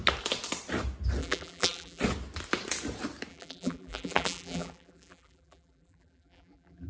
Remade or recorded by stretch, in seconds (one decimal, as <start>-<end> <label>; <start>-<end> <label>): 0.0-1.2 recorded; 1.2-2.0 remade; 2.0-3.3 recorded; 3.3-6.9 remade